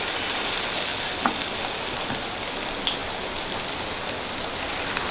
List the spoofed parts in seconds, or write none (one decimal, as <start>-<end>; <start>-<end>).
none